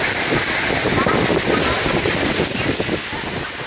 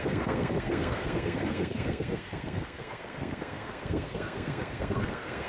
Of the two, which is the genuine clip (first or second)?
first